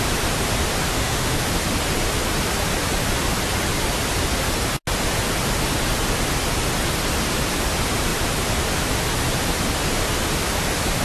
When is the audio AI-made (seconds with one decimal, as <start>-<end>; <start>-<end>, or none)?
0.9-1.4